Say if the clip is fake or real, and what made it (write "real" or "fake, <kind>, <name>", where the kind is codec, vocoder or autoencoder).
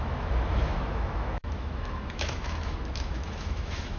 fake, autoencoder, DAC-VAE